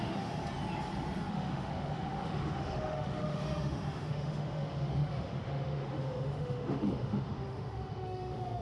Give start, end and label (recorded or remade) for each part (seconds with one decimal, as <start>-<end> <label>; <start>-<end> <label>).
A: 0.0-0.4 remade; 0.4-1.3 recorded; 1.3-8.6 remade